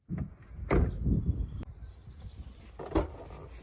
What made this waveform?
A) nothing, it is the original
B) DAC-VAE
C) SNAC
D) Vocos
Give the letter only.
A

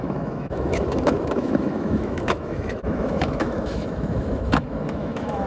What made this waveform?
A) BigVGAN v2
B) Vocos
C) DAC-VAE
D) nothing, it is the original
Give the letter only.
C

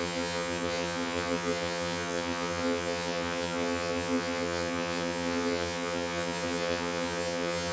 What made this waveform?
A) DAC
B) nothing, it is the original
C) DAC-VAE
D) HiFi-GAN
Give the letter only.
D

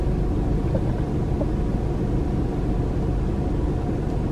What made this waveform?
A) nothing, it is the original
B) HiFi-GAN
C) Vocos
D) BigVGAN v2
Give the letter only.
A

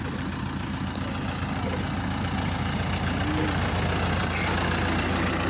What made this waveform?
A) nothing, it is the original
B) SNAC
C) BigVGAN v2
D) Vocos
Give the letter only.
A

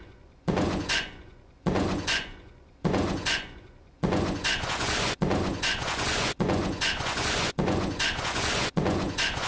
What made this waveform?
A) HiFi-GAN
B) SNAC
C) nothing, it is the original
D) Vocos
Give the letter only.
D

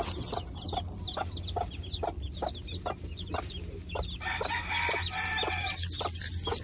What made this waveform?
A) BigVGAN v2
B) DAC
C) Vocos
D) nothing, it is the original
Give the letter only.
D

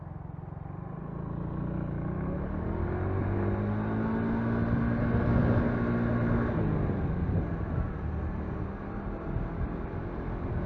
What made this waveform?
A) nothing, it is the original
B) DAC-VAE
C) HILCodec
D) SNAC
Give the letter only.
A